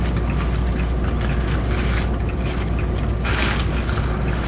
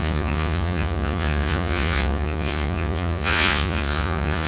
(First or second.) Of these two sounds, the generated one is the second